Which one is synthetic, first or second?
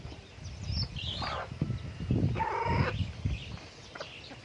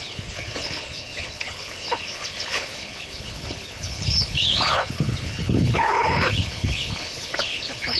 second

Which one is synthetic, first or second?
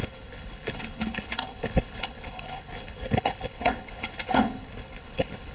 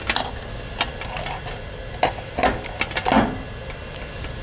first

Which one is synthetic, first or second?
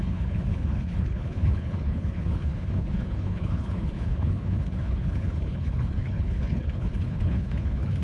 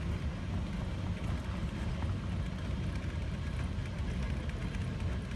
first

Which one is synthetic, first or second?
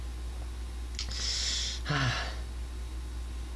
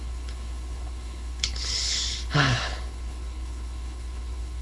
second